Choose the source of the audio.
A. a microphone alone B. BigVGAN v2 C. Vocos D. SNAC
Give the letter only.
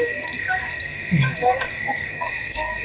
D